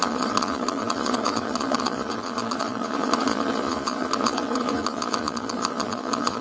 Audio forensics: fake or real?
fake